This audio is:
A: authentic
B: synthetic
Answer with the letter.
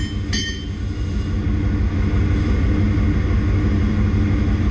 A